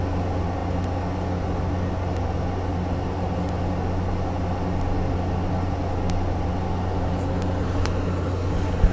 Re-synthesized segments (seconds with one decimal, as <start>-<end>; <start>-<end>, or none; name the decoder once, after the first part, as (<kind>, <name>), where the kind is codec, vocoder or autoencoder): none